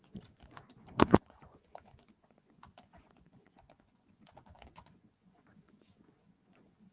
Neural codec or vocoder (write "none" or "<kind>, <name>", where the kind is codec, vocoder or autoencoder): vocoder, Vocos